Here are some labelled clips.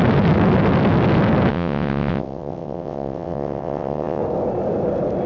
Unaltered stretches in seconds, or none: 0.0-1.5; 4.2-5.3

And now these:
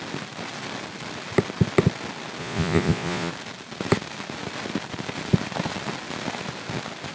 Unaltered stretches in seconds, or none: 0.0-2.4; 3.3-7.1

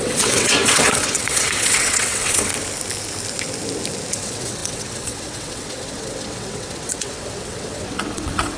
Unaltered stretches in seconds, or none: 2.5-4.1

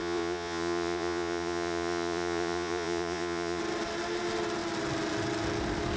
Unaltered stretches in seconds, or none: 3.6-6.0

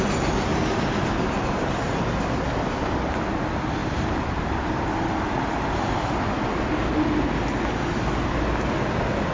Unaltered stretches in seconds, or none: 0.0-3.8; 4.9-9.3

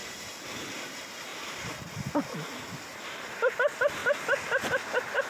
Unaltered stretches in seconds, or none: 0.5-1.3; 2.5-5.3

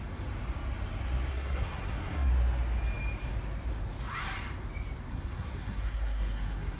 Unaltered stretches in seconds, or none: 0.0-1.3; 2.3-5.1